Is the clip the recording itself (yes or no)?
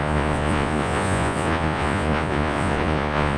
no